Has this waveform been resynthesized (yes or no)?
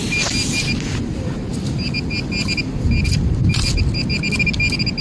no